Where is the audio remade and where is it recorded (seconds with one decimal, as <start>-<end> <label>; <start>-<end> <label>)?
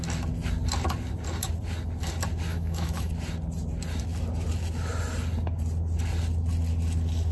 0.0-2.5 recorded; 2.5-3.1 remade; 3.1-7.3 recorded